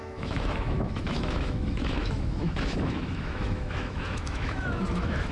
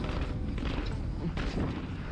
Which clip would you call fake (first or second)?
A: first